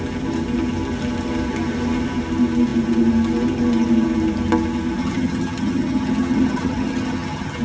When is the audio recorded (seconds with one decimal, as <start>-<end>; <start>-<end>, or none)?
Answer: 0.0-5.0